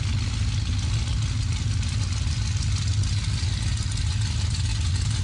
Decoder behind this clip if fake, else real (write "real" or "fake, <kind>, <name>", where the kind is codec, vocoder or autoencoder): real